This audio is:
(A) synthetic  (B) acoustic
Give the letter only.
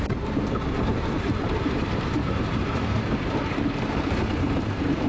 A